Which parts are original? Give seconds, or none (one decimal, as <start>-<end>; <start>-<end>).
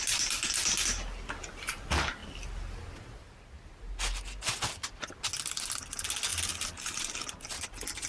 0.0-8.1